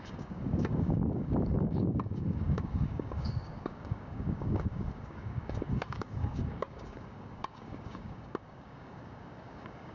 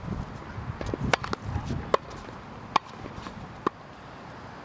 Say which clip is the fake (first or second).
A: first